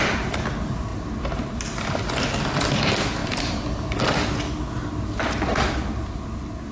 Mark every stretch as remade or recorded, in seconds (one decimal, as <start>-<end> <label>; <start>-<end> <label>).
0.0-6.7 recorded